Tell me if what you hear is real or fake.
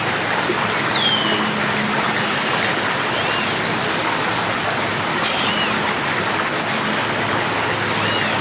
real